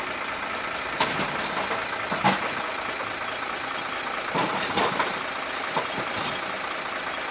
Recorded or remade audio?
recorded